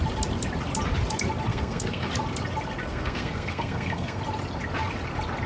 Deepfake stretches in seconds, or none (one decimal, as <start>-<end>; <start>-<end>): 1.5-2.1; 2.9-4.2

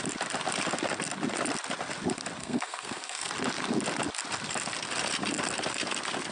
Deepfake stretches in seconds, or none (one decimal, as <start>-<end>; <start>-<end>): 2.4-3.3